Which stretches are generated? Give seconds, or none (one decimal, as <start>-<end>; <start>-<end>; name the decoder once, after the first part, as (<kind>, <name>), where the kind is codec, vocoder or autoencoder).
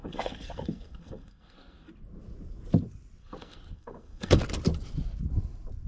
0.0-1.9 (codec, SNAC); 3.2-4.4